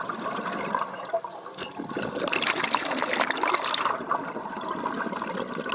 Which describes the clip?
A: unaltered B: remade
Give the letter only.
A